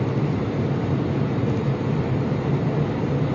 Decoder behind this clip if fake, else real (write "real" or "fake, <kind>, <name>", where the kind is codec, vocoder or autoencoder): real